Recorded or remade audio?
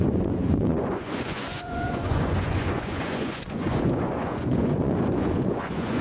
remade